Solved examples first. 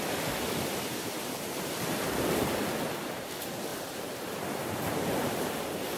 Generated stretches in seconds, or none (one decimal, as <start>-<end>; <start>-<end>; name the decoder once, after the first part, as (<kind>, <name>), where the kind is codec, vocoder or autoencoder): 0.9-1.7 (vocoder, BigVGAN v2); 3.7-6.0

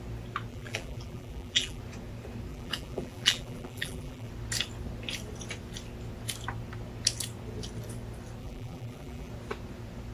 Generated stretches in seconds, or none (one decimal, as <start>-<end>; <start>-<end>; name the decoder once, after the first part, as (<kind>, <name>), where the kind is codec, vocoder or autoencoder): 0.5-1.8 (vocoder, BigVGAN v2); 2.5-4.3; 8.4-9.3

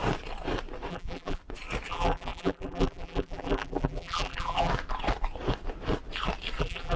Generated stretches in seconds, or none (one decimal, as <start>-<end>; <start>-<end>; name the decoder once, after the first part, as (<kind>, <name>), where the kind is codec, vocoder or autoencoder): 0.9-1.4 (vocoder, BigVGAN v2); 1.9-4.7; 6.6-7.0

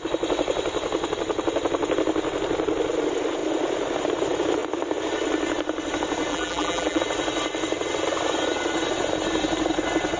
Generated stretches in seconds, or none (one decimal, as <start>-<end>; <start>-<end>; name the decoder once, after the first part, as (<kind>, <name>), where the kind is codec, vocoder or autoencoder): 6.3-7.0 (vocoder, BigVGAN v2)

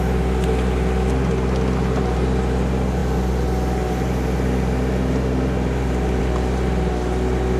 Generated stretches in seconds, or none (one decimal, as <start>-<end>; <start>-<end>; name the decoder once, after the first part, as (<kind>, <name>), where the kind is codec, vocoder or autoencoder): none